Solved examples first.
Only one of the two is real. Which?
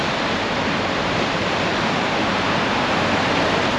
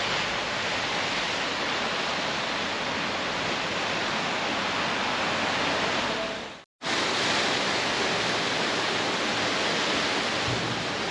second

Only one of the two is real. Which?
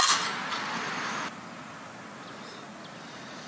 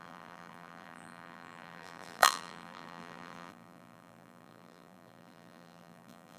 first